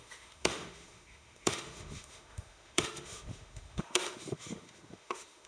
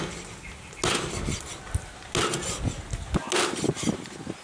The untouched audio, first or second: second